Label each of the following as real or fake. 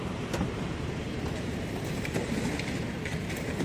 fake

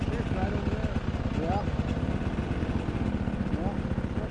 real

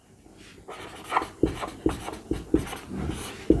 real